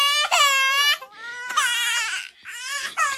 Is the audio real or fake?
real